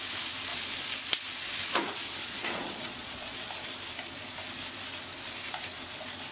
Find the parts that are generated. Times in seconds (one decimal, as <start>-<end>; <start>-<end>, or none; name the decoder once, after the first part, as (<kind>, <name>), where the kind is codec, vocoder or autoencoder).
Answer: 2.2-3.5 (vocoder, Vocos)